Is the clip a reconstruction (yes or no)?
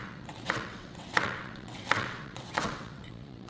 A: yes